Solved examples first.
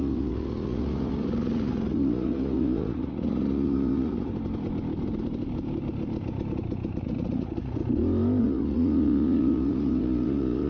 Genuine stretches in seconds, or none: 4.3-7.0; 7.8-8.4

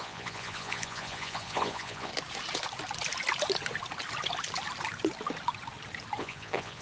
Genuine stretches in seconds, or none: 2.1-6.2

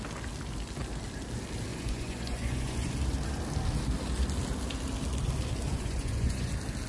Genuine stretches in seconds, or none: 0.0-1.7; 2.9-5.7; 6.5-6.9

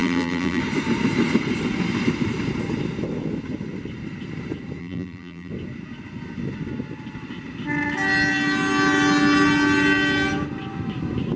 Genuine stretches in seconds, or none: 0.6-4.8; 5.5-11.4

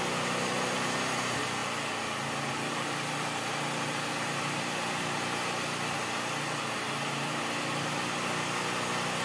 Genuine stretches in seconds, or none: 1.6-2.5

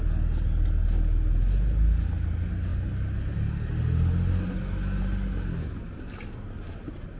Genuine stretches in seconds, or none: 0.0-7.2

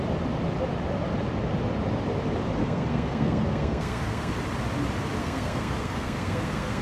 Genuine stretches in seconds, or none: 0.0-2.6; 4.3-5.2